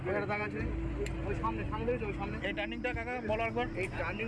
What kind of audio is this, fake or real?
real